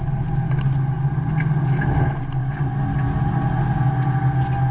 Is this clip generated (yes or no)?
no